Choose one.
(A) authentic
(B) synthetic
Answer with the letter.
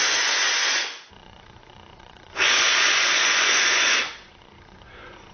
B